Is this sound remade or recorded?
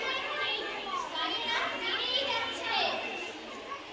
recorded